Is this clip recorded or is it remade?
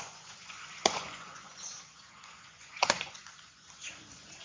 remade